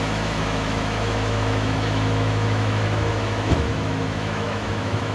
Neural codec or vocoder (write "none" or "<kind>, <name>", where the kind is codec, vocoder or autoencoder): autoencoder, DAC-VAE